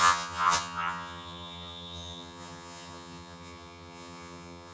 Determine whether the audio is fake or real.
fake